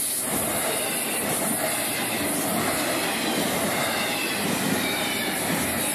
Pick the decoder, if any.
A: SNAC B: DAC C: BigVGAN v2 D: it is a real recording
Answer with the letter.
D